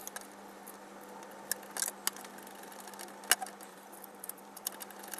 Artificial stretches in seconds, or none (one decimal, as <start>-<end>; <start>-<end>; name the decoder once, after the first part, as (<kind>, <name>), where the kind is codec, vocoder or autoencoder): 3.7-4.7 (vocoder, BigVGAN v2)